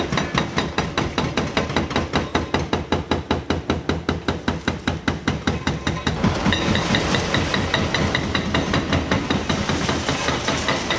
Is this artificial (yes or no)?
no